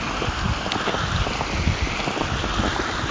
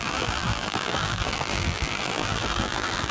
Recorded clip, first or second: first